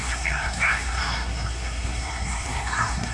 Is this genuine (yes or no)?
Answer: no